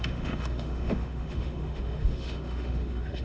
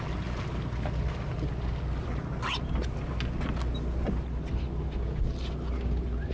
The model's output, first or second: first